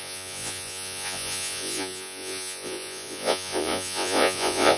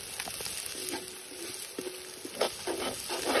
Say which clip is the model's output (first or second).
first